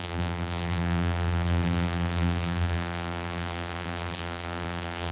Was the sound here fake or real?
fake